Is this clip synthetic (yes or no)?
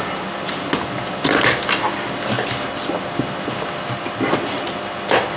no